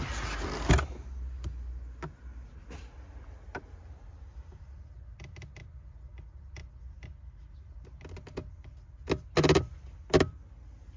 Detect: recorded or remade recorded